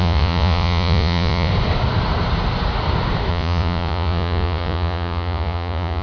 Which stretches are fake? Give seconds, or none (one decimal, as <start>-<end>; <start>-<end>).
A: 0.0-1.5; 3.3-6.0